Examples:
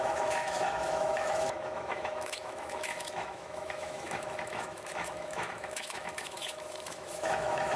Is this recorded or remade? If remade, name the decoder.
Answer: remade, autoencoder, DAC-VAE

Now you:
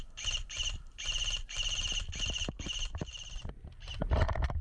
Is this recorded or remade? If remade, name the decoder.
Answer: recorded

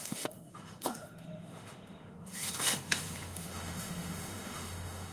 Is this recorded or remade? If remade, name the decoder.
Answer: remade, autoencoder, DAC-VAE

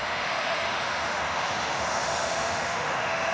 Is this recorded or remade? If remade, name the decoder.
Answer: remade, autoencoder, DAC-VAE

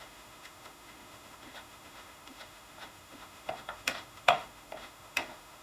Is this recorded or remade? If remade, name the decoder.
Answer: remade, autoencoder, DAC-VAE